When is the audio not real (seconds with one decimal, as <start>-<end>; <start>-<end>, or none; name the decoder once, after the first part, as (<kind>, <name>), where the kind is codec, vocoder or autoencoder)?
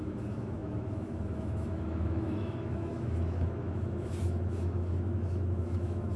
0.0-6.2 (autoencoder, DAC-VAE)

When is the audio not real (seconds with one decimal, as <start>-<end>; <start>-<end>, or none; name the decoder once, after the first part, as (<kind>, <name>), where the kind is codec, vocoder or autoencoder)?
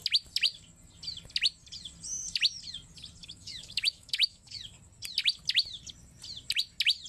3.2-4.6 (autoencoder, DAC-VAE)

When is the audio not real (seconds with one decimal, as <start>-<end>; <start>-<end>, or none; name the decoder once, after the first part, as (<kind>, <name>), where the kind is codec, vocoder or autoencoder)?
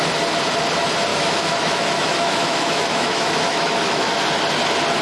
1.1-4.1 (autoencoder, DAC-VAE)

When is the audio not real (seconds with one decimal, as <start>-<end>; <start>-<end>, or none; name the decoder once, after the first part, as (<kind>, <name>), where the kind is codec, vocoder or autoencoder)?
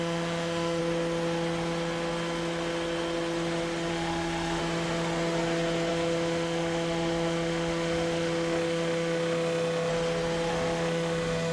0.0-0.8 (autoencoder, DAC-VAE); 3.9-4.6; 5.9-9.9; 10.5-11.5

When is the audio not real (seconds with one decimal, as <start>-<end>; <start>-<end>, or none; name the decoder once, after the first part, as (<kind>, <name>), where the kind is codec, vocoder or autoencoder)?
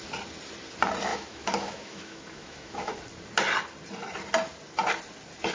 1.1-2.9 (autoencoder, DAC-VAE)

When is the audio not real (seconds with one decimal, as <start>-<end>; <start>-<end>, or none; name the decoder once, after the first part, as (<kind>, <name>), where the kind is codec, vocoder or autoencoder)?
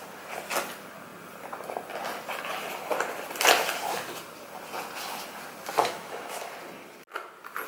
5.8-6.5 (autoencoder, DAC-VAE)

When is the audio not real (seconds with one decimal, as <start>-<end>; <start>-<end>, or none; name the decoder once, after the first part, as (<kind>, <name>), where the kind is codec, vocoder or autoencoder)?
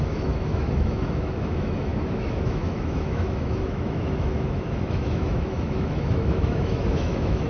0.0-7.5 (autoencoder, DAC-VAE)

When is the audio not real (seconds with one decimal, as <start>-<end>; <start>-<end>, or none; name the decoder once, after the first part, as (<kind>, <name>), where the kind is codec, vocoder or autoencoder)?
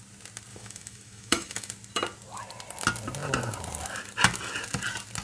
0.5-1.7 (autoencoder, DAC-VAE)